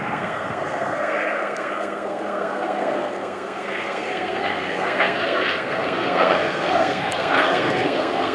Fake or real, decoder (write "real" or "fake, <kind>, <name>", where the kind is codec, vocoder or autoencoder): fake, codec, SNAC